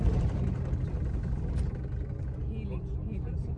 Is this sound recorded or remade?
recorded